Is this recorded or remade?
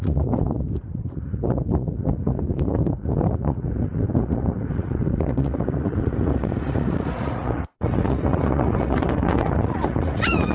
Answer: remade